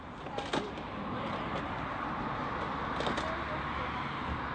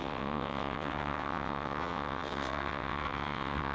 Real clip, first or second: first